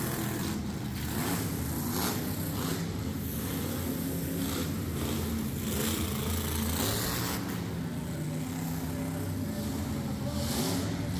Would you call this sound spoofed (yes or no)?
no